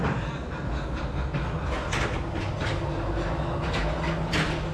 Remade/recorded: recorded